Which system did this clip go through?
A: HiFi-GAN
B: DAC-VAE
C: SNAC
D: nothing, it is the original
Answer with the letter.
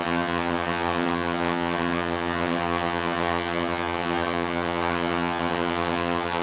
A